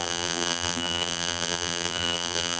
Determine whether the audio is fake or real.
fake